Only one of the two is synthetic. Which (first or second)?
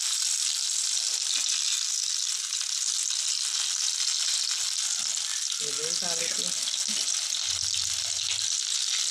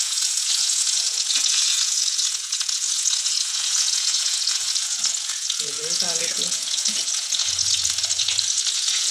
second